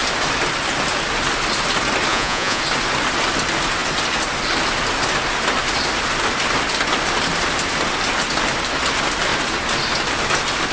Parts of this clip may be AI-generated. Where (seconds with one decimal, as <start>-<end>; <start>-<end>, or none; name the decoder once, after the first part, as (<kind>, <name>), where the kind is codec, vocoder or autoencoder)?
2.1-2.6 (vocoder, Vocos)